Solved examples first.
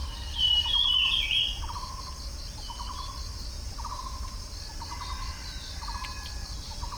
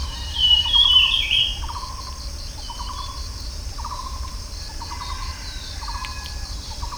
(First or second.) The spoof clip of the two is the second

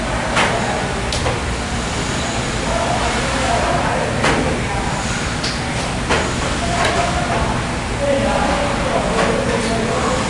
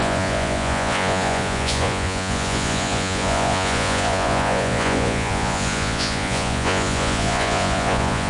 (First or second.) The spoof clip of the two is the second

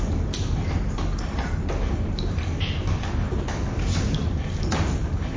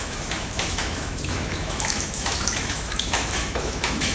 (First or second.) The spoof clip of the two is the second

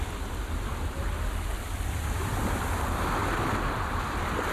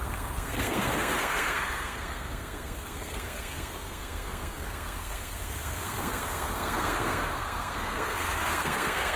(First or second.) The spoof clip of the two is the second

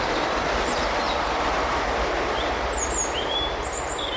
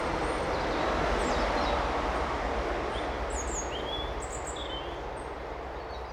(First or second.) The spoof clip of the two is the first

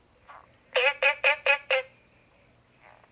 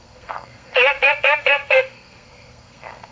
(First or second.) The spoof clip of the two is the second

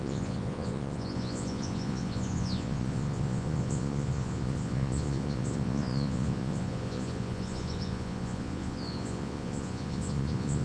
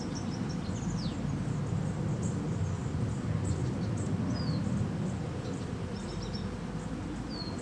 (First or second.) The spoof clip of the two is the first